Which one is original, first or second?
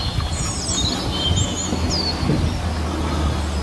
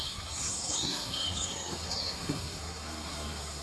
first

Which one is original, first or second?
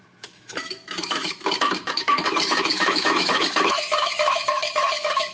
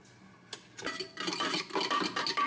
second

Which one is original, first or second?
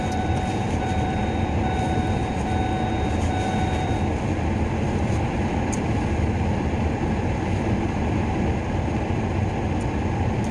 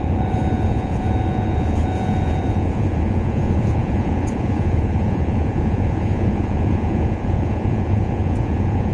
first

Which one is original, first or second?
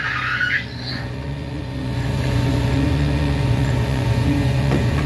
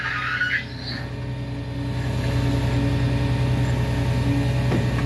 second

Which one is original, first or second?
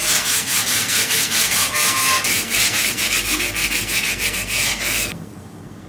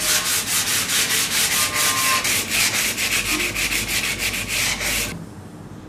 second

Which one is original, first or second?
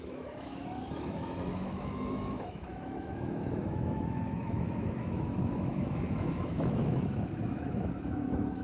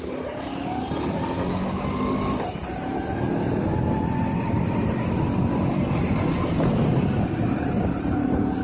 second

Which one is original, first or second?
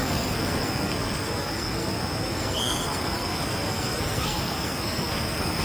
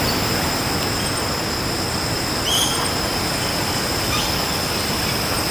second